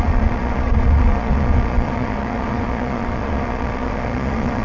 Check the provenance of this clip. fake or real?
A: fake